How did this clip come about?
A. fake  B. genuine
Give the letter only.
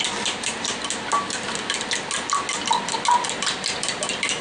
B